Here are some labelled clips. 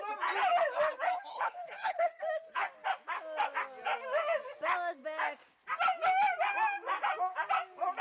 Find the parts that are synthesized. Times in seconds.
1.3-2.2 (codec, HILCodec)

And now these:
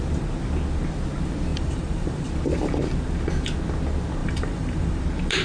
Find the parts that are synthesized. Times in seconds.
1.5-2.3 (vocoder, BigVGAN v2); 4.2-5.0

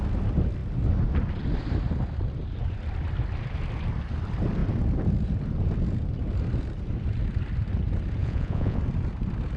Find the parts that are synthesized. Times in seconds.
8.2-8.8 (vocoder, Vocos)

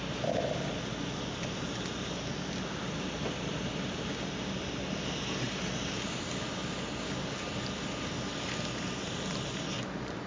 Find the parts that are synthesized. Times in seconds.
none